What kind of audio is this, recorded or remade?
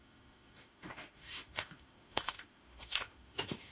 remade